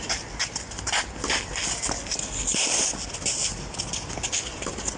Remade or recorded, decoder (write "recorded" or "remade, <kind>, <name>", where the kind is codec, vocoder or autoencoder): recorded